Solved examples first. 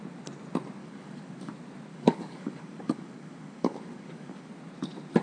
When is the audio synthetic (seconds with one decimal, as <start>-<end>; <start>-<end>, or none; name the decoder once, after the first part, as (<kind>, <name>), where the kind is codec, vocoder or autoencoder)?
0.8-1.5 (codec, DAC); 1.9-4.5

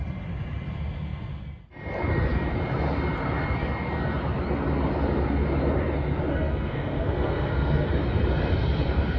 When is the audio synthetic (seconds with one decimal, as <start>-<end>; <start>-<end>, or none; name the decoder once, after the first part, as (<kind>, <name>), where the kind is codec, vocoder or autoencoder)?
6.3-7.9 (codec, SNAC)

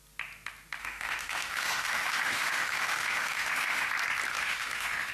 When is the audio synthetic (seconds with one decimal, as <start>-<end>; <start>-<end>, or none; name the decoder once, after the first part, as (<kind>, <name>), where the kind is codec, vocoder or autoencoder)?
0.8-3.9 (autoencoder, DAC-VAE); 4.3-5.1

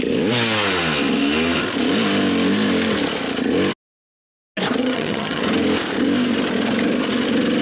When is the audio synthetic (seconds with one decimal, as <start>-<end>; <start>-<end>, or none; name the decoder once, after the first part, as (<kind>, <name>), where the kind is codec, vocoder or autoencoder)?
4.8-5.4 (vocoder, HiFi-GAN)

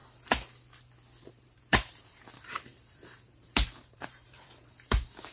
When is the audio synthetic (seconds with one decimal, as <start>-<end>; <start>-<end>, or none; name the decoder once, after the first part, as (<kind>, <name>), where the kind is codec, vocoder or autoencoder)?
1.3-5.3 (vocoder, BigVGAN v2)

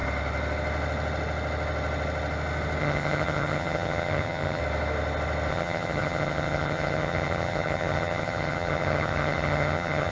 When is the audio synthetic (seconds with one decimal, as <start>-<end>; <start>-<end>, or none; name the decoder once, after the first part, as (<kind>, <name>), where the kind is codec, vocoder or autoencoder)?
2.8-4.6 (vocoder, HiFi-GAN); 5.5-10.1